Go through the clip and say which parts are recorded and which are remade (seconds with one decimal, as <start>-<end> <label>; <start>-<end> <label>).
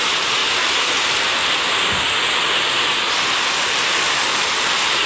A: 0.0-4.3 recorded; 4.3-5.1 remade